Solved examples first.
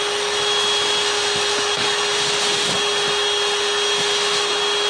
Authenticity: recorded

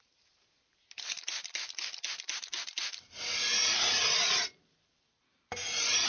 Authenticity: remade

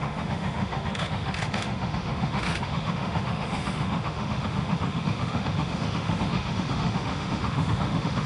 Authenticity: remade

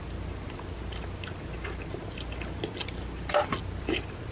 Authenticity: recorded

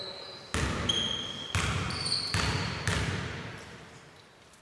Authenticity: recorded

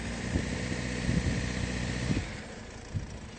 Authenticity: recorded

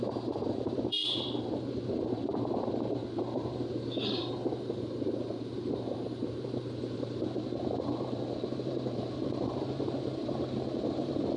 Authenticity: remade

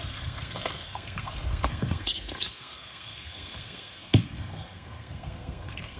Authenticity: remade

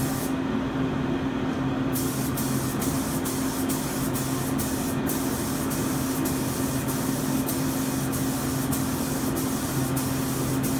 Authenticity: recorded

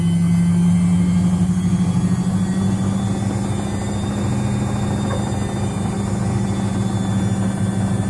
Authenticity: recorded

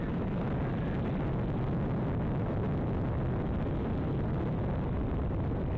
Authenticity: recorded